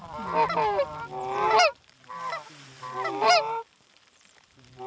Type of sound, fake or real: fake